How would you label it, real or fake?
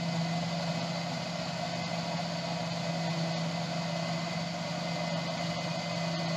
real